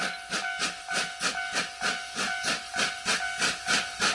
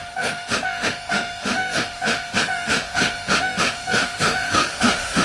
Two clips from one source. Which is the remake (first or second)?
second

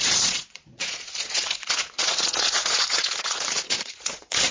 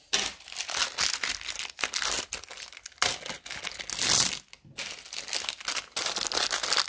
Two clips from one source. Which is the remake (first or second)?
first